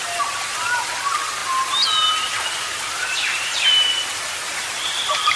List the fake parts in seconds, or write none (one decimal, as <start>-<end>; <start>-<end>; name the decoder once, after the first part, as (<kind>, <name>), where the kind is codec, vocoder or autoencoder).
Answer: none